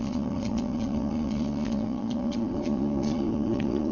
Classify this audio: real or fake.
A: fake